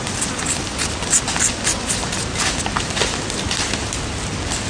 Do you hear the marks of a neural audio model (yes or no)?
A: no